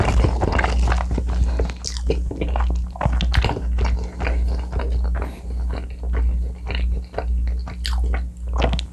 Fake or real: real